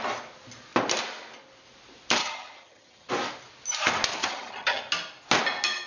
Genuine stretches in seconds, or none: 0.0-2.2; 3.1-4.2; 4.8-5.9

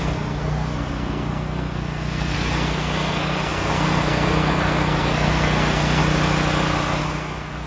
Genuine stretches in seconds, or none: 6.0-7.0

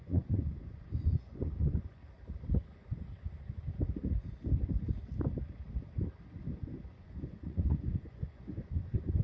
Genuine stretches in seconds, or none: 2.0-6.6